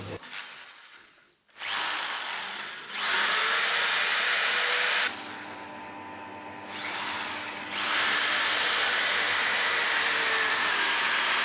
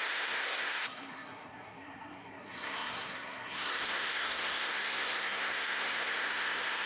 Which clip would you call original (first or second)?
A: first